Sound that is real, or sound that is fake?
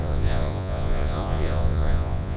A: fake